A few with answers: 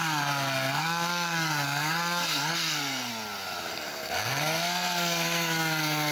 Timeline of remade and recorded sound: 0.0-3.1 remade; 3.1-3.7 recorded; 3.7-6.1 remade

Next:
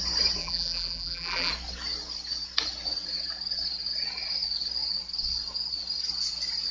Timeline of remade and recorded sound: 0.0-0.4 recorded; 0.4-1.5 remade; 1.5-6.7 recorded

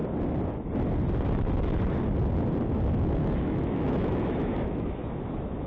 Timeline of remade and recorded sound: 0.0-3.1 recorded; 3.1-5.7 remade

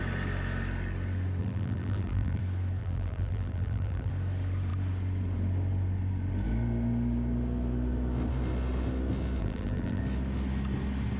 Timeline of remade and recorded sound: 0.0-1.4 recorded; 1.4-2.4 remade; 2.4-2.8 recorded; 2.8-4.1 remade; 4.1-9.4 recorded; 9.4-10.0 remade; 10.0-11.2 recorded

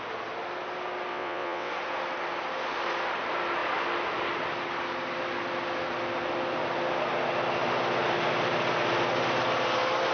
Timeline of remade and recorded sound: 0.0-1.1 recorded; 1.1-1.7 remade; 1.7-10.1 recorded

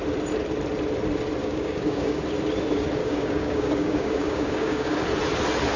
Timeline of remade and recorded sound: 0.0-1.4 recorded; 1.4-2.2 remade; 2.2-3.0 recorded; 3.0-4.9 remade; 4.9-5.8 recorded

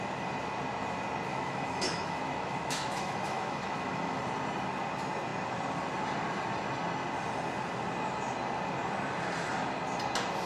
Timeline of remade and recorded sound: 0.0-1.3 recorded; 1.3-4.2 remade; 4.2-10.5 recorded